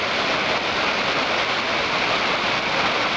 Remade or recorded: recorded